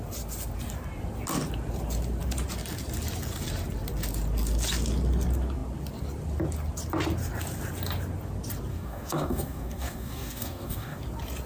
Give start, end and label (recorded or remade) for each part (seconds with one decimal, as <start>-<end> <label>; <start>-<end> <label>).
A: 0.0-8.7 recorded; 8.7-11.0 remade; 11.0-11.5 recorded